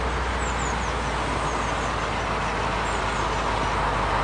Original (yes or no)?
yes